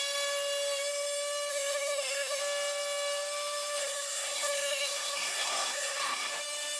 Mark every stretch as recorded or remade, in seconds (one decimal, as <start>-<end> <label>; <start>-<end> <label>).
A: 0.0-1.5 recorded; 1.5-2.4 remade; 2.4-3.8 recorded; 3.8-6.3 remade; 6.3-6.8 recorded